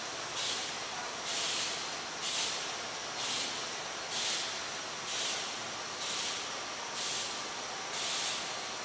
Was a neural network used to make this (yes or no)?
no